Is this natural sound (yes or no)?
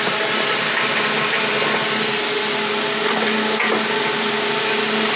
yes